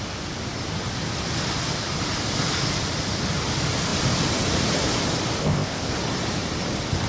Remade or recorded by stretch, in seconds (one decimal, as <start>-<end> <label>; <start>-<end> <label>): 0.0-5.4 recorded; 5.4-5.9 remade; 5.9-7.1 recorded